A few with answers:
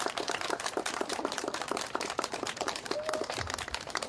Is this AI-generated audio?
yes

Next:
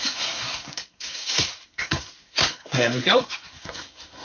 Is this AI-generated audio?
yes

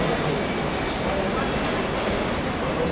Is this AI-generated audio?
no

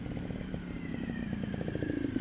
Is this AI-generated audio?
no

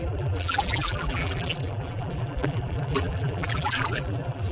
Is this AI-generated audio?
yes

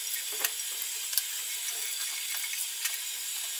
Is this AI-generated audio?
no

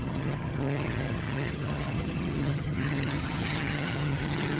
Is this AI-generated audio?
yes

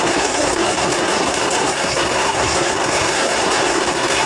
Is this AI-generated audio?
yes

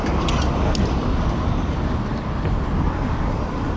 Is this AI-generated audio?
no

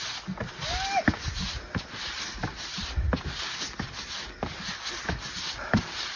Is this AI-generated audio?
no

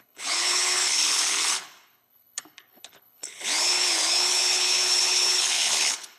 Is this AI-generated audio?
yes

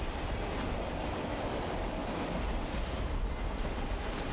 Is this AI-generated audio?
no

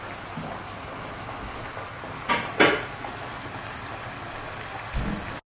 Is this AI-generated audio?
no